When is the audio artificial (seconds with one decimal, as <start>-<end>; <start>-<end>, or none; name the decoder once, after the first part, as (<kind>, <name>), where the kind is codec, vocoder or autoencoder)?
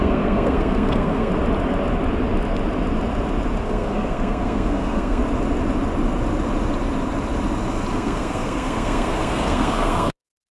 0.0-1.3 (codec, SNAC); 3.6-5.2; 7.9-10.6